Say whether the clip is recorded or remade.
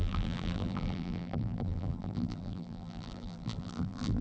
remade